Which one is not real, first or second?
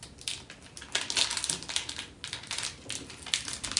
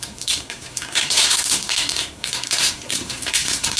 second